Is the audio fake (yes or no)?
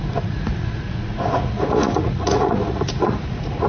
yes